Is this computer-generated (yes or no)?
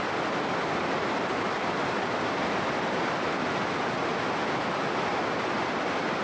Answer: yes